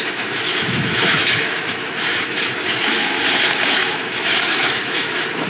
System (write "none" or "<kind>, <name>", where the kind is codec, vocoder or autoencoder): autoencoder, DAC-VAE